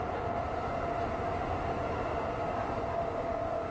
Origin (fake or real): real